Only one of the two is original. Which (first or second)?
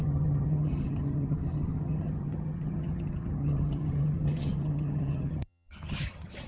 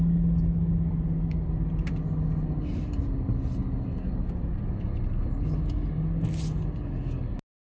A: second